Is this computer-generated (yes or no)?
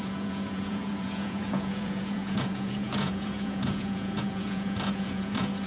yes